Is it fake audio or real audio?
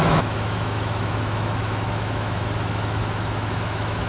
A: fake